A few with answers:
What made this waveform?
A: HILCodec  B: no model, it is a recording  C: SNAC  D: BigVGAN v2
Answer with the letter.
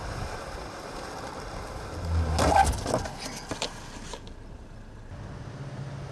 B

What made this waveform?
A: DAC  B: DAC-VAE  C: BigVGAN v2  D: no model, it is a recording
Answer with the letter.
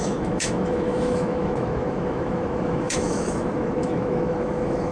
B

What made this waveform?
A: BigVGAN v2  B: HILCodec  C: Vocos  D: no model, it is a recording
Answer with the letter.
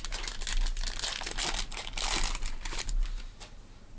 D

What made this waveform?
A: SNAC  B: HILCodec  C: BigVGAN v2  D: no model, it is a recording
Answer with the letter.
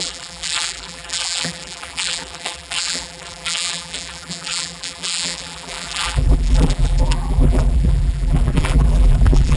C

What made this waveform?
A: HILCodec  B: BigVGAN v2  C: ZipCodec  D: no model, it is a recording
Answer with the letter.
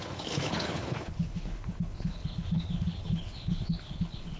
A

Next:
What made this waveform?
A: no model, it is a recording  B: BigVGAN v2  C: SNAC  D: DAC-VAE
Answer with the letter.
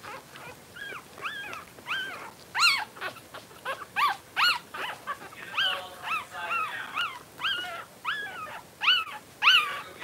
A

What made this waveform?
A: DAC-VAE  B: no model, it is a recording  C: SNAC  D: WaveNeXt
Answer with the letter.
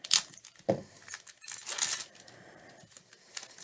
B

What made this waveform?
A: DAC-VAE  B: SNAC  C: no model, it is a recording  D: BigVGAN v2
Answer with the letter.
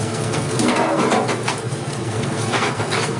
B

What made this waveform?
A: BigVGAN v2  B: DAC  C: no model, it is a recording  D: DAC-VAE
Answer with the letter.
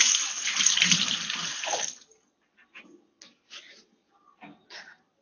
C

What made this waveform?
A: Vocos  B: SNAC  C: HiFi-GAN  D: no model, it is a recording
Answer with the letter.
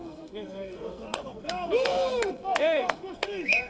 B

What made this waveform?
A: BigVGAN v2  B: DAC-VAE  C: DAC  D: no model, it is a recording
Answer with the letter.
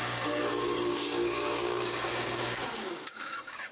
C